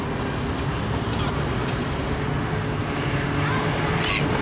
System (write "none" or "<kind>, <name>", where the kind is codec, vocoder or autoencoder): none